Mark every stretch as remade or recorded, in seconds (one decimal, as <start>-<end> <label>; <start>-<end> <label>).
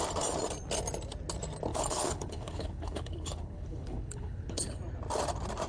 0.0-1.7 recorded; 1.7-4.8 remade; 4.8-5.7 recorded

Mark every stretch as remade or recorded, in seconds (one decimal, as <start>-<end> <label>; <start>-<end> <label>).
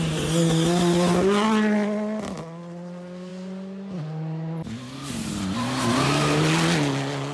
0.0-7.3 recorded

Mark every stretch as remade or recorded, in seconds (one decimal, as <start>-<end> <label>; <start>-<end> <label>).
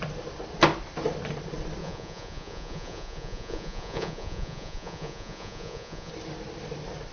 0.0-1.8 recorded; 1.8-6.1 remade; 6.1-7.1 recorded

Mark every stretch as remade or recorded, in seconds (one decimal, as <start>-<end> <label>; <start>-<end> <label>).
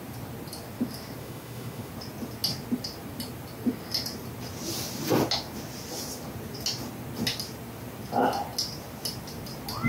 0.0-1.2 recorded; 1.2-1.9 remade; 1.9-9.9 recorded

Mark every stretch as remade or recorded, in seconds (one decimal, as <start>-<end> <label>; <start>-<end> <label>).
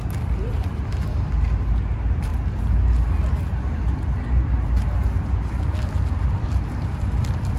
0.0-7.6 recorded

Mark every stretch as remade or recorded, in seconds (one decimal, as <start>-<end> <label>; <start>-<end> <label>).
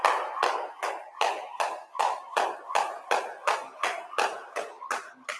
0.0-5.4 recorded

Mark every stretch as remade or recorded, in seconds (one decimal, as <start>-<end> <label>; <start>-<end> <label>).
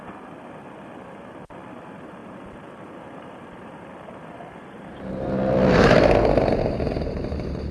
0.0-7.7 remade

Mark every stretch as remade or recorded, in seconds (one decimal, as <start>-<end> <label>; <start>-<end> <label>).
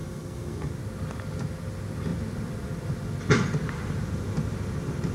0.0-0.7 remade; 0.7-5.1 recorded